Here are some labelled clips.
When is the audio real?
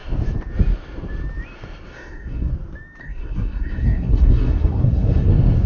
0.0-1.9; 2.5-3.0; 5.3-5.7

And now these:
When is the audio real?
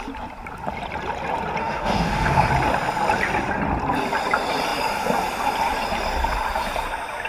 0.0-1.6; 2.5-7.3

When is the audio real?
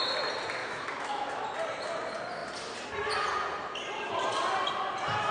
0.0-0.6; 1.3-5.3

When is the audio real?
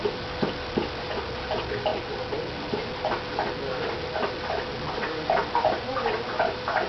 0.0-6.9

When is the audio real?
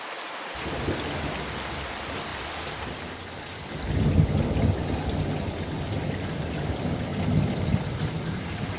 0.0-8.8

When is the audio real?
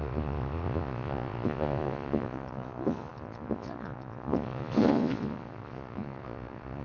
none